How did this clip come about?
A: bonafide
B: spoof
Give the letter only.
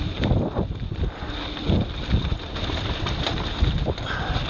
A